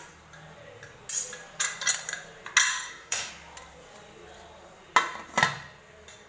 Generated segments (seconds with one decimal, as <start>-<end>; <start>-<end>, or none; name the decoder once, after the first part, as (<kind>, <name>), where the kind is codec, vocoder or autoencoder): 2.7-3.3 (autoencoder, DAC-VAE)

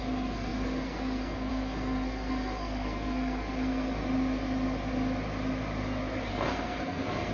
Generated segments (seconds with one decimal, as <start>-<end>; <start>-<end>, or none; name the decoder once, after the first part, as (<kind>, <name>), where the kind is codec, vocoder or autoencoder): 0.0-4.0 (codec, SNAC); 6.3-7.3